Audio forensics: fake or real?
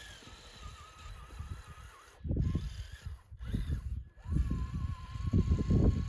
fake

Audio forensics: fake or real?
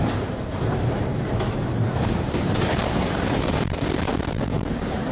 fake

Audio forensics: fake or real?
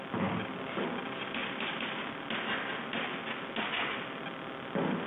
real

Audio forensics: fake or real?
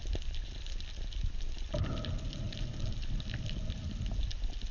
real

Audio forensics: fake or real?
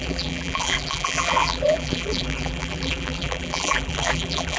fake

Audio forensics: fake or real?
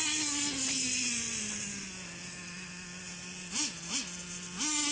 real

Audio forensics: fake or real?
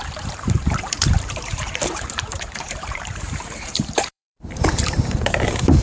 fake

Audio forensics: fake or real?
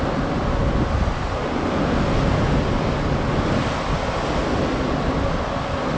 real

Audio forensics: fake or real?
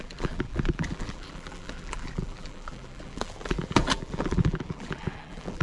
fake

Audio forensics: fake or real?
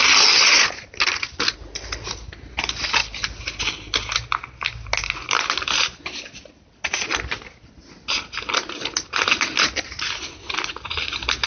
real